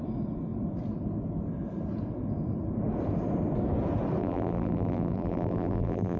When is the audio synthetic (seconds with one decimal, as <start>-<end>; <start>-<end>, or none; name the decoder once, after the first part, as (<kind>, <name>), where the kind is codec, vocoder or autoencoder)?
4.2-6.2 (vocoder, BigVGAN v2)